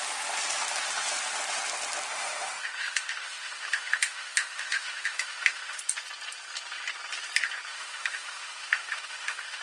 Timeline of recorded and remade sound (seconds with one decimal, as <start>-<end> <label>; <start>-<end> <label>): 0.0-2.1 recorded; 2.1-5.8 remade; 5.8-7.7 recorded; 7.7-9.6 remade